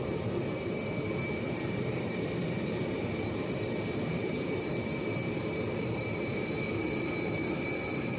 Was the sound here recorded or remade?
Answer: remade